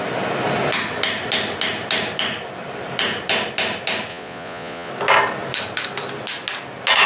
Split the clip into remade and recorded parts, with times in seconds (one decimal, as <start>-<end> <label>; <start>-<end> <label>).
0.0-4.1 recorded; 4.1-4.9 remade; 4.9-7.1 recorded